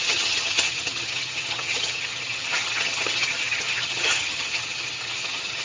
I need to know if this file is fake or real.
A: fake